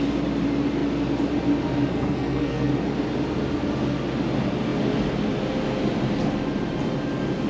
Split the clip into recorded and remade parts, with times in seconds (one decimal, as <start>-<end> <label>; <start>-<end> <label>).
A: 0.0-1.9 recorded; 1.9-2.7 remade; 2.7-7.5 recorded